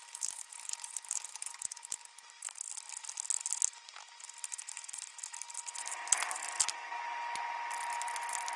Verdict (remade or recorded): recorded